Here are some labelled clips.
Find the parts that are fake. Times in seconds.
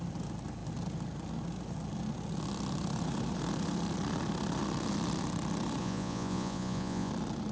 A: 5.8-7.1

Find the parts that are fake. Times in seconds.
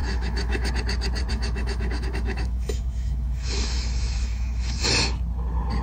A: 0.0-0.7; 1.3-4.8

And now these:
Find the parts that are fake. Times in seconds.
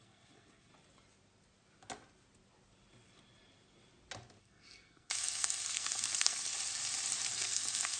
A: 0.0-0.7; 4.4-6.5; 7.3-8.0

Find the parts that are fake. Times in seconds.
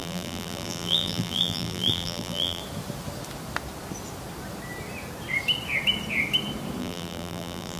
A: 0.0-2.6; 6.8-7.8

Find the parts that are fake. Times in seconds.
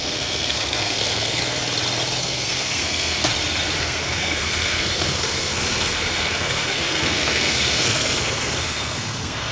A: 0.0-1.4; 2.2-3.2; 3.8-9.5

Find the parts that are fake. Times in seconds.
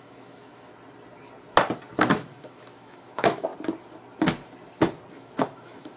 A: 0.0-0.7; 2.0-3.5; 5.1-6.0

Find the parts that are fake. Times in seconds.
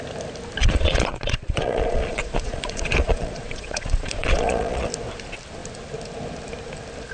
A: 0.6-4.9